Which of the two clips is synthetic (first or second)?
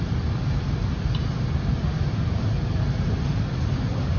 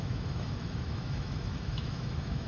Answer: second